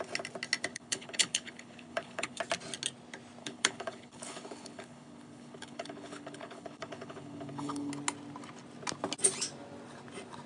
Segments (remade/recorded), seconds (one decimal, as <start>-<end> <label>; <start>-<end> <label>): 0.0-0.7 recorded; 0.7-2.4 remade; 2.4-3.4 recorded; 3.4-7.9 remade; 7.9-10.5 recorded